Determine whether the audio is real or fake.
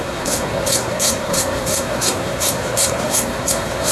fake